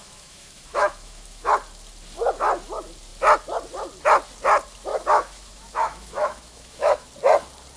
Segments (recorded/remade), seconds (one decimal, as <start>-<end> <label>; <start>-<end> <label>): 0.0-1.5 remade; 1.5-4.9 recorded; 4.9-7.1 remade; 7.1-7.8 recorded